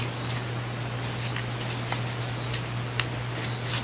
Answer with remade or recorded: recorded